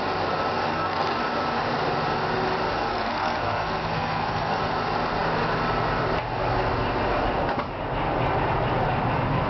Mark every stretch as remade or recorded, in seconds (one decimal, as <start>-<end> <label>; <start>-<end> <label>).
0.0-0.7 recorded; 0.7-1.2 remade; 1.2-2.9 recorded; 2.9-4.6 remade; 4.6-9.5 recorded